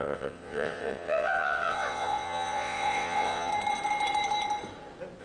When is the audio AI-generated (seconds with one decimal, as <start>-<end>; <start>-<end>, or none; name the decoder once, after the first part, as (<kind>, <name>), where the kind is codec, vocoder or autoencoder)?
0.0-3.5 (vocoder, WaveNeXt)